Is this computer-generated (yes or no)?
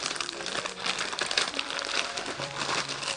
yes